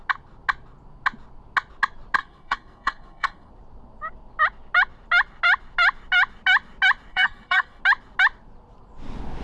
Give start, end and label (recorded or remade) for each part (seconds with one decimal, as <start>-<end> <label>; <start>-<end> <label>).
0.0-2.2 recorded; 2.2-3.5 remade; 3.5-7.1 recorded; 7.1-7.8 remade; 7.8-9.4 recorded